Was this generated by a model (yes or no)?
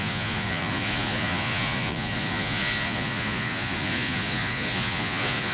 yes